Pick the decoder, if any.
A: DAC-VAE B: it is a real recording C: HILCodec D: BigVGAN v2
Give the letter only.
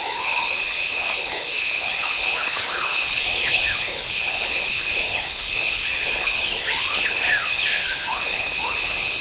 C